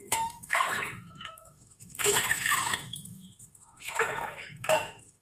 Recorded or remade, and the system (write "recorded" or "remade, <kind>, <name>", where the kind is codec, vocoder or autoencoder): remade, autoencoder, DAC-VAE